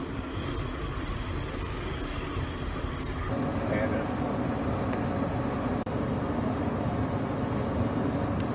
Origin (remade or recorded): recorded